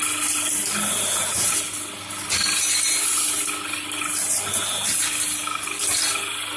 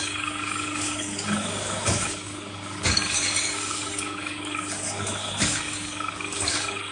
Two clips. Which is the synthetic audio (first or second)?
second